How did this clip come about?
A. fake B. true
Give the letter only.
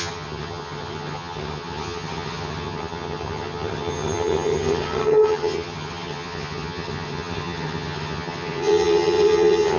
A